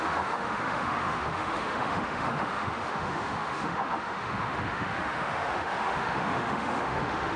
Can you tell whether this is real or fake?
fake